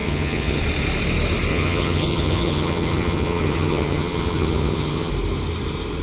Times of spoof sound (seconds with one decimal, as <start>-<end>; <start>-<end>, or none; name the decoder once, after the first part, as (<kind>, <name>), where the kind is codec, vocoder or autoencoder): 0.0-0.6 (vocoder, HiFi-GAN); 1.5-5.1